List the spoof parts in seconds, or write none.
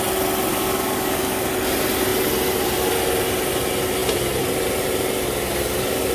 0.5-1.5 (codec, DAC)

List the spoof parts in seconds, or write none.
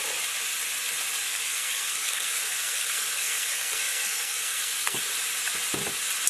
1.2-5.0 (codec, SNAC)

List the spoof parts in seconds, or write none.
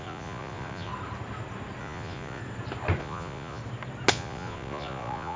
0.0-0.9 (vocoder, Vocos); 1.8-2.4; 3.0-3.6; 4.1-5.4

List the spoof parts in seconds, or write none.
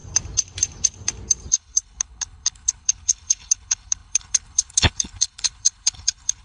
1.5-6.4 (codec, HILCodec)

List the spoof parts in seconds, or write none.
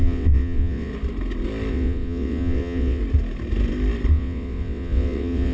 0.0-0.9 (vocoder, WaveNeXt); 1.7-3.0; 4.1-5.5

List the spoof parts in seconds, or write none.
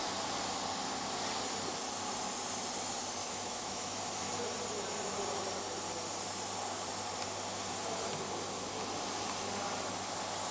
3.2-4.0 (autoencoder, DAC-VAE)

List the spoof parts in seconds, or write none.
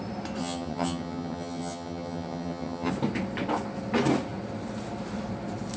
0.4-2.9 (vocoder, HiFi-GAN)